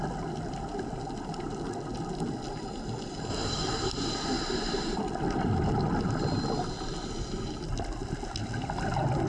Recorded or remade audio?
recorded